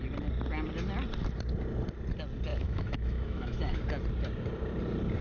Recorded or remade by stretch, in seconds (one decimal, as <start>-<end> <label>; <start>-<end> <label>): 0.0-2.5 recorded; 2.5-3.8 remade; 3.8-5.2 recorded